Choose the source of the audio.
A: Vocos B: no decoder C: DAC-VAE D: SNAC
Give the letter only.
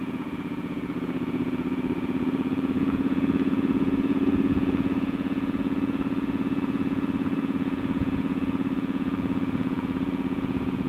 A